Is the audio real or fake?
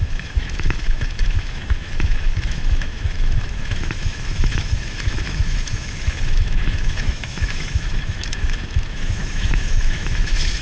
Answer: fake